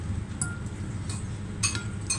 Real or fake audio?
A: real